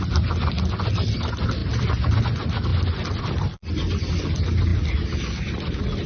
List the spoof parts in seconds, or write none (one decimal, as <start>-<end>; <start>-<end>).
none